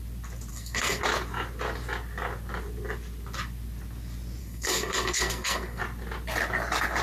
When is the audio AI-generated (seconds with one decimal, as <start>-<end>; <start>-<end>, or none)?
0.5-1.0; 4.4-5.8